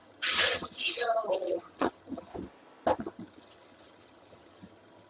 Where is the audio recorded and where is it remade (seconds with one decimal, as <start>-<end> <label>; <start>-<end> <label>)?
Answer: 0.0-2.3 remade; 2.3-3.0 recorded; 3.0-5.1 remade